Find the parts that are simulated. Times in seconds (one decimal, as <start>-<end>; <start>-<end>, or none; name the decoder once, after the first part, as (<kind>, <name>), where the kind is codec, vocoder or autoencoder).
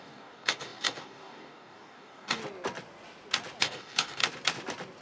0.0-2.4 (codec, DAC); 3.6-4.2